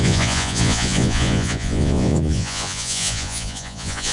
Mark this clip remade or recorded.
remade